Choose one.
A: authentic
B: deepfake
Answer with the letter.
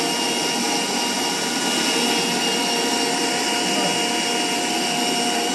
A